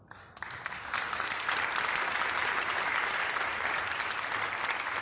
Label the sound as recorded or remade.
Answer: recorded